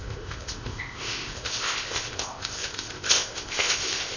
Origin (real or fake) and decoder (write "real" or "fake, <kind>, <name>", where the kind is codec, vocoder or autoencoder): fake, codec, ZipCodec